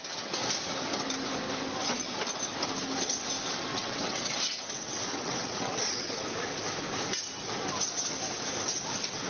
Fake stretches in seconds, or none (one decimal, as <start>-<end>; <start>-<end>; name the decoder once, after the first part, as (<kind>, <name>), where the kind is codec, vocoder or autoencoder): 3.7-6.1 (vocoder, WaveNeXt)

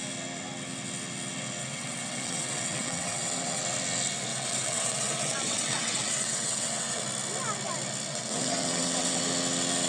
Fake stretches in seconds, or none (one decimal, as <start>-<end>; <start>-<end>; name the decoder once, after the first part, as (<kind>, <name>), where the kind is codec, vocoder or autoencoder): 1.6-3.6 (vocoder, WaveNeXt); 4.3-7.0; 8.1-9.2

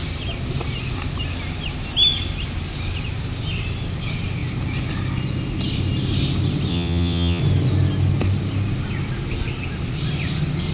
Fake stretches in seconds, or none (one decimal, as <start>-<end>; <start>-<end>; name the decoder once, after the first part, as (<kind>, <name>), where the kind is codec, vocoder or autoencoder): 6.7-7.4 (vocoder, WaveNeXt)

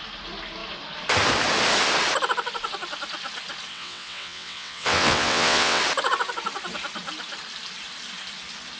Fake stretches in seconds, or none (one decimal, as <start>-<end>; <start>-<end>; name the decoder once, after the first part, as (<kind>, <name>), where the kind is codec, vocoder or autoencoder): 3.7-5.8 (vocoder, WaveNeXt)

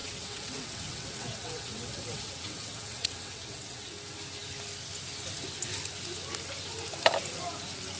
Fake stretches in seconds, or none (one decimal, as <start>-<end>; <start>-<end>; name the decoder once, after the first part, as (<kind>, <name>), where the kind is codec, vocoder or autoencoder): 0.0-3.9 (vocoder, WaveNeXt)